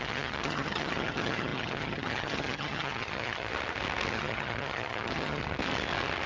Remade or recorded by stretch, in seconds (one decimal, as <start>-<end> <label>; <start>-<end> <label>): 0.0-3.5 remade; 3.5-4.1 recorded; 4.1-5.4 remade; 5.4-6.3 recorded